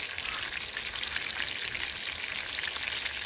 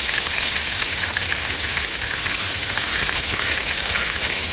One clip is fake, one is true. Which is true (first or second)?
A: first